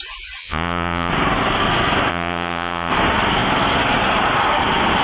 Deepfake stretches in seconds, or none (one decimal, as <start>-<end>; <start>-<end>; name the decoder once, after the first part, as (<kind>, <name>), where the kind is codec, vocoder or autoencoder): 0.4-1.1 (vocoder, Vocos); 2.1-2.9

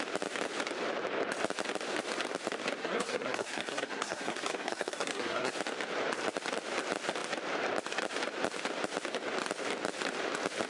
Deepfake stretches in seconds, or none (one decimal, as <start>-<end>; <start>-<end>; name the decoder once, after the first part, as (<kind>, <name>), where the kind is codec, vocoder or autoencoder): 2.8-5.5 (codec, SNAC)

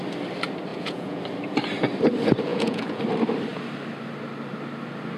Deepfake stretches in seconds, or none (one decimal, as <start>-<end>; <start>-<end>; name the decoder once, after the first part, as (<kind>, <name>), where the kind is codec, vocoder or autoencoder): 0.7-1.2 (vocoder, Vocos); 2.5-3.0